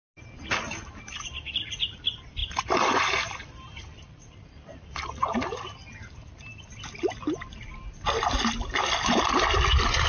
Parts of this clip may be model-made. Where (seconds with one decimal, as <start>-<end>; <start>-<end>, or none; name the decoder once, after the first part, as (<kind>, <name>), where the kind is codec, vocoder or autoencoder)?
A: 2.4-7.5 (vocoder, BigVGAN v2)